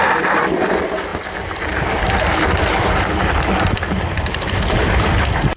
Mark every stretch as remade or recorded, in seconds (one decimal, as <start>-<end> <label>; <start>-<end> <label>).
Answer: 0.0-1.1 recorded; 1.1-4.5 remade; 4.5-5.6 recorded